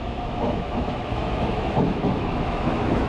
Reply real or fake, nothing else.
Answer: fake